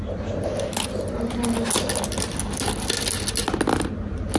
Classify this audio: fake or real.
real